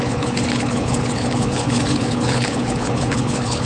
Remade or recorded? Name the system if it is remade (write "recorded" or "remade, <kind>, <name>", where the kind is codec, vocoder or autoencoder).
remade, codec, HILCodec